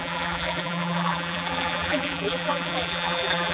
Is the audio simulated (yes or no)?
yes